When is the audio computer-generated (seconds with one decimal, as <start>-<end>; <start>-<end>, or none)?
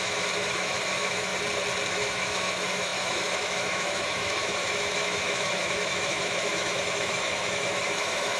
0.0-1.3; 1.9-8.4